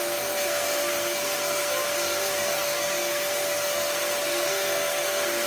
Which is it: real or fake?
fake